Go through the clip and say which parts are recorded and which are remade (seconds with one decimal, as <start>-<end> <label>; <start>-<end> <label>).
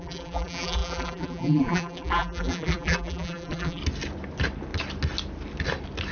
0.0-3.8 remade; 3.8-6.1 recorded